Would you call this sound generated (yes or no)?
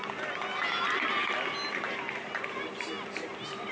no